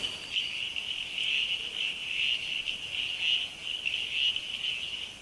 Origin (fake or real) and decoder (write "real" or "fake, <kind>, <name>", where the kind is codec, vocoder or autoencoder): real